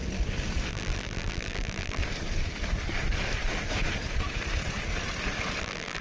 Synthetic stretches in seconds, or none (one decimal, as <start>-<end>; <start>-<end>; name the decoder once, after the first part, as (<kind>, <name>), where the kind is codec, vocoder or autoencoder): 0.7-2.0 (vocoder, BigVGAN v2); 5.6-6.0